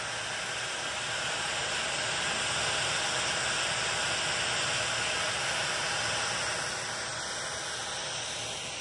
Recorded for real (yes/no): yes